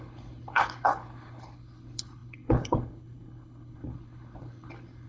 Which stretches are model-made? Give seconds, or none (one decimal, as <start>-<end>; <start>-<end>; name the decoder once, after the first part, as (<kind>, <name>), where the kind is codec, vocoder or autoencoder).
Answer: 0.0-5.1 (codec, HILCodec)